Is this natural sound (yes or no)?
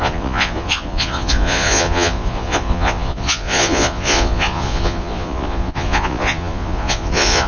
no